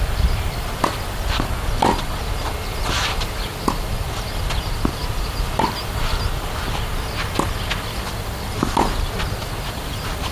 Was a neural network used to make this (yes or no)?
no